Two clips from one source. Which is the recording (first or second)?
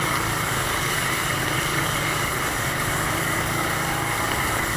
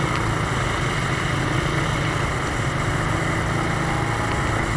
second